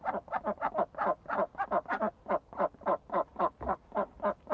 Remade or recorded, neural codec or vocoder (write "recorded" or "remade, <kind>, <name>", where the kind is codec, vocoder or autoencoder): recorded